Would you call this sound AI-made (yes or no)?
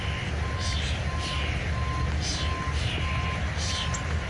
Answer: no